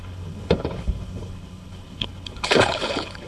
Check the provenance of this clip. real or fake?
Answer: fake